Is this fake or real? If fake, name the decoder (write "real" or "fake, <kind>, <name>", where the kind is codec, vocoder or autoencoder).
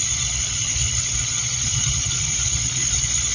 fake, vocoder, Vocos